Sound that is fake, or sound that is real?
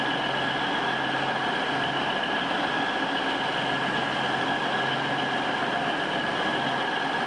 real